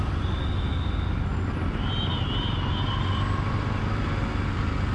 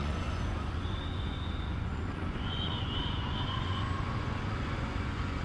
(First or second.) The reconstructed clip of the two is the second